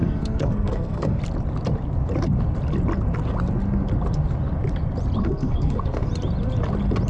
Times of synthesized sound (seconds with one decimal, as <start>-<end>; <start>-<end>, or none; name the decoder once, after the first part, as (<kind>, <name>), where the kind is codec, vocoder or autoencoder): 0.0-1.2 (codec, SNAC); 5.2-6.1

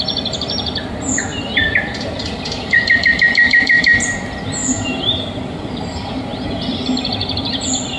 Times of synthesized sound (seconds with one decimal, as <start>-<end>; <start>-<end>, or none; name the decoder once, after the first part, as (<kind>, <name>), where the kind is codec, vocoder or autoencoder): 0.0-8.0 (vocoder, BigVGAN v2)

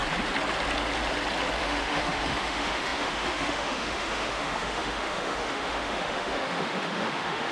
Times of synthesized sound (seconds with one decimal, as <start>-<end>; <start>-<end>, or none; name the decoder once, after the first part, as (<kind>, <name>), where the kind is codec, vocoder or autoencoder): 1.6-7.5 (autoencoder, DAC-VAE)

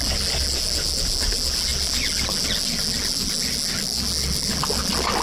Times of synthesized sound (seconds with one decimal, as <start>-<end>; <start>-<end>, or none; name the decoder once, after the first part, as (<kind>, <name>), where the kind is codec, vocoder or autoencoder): none

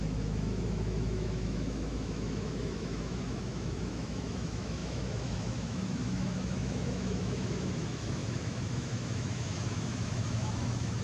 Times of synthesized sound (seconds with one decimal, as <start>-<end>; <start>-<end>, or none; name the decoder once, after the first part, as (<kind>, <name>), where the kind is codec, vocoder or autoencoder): 0.0-11.0 (autoencoder, DAC-VAE)